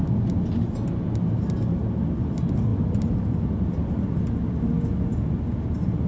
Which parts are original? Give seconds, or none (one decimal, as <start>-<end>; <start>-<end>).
0.0-6.1